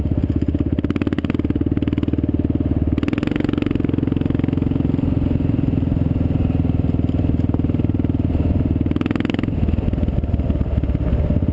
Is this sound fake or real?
real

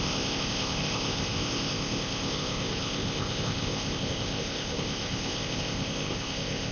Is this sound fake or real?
fake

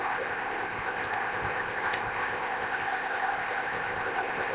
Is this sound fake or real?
fake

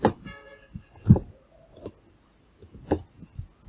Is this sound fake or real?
real